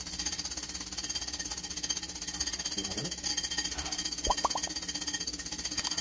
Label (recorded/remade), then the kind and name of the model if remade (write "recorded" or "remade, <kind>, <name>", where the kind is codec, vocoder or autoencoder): recorded